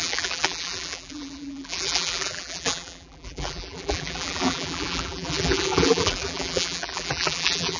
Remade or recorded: remade